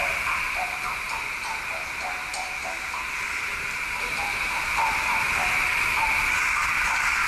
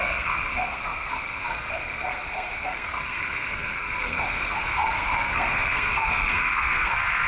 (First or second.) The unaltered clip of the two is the first